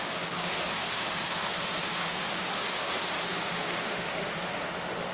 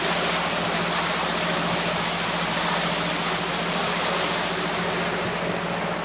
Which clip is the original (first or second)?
second